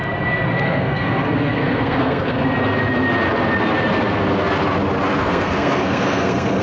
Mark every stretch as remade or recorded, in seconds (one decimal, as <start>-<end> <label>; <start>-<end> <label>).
0.0-0.5 recorded; 0.5-2.4 remade; 2.4-5.2 recorded; 5.2-6.6 remade